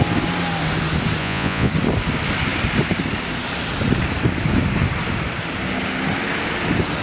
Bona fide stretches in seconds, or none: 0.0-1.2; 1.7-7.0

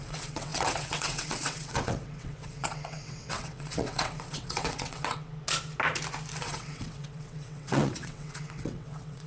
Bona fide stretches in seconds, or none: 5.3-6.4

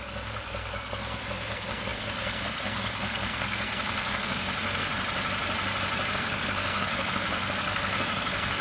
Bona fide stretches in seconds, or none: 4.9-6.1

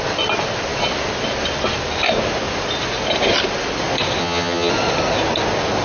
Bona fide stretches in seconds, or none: 0.0-4.2; 4.7-5.8